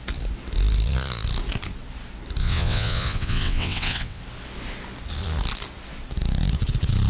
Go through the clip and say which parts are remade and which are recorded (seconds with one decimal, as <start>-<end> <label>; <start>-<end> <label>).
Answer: 0.0-2.4 recorded; 2.4-4.2 remade; 4.2-7.1 recorded